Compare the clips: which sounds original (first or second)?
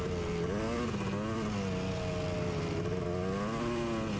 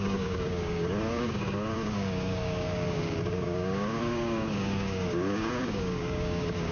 first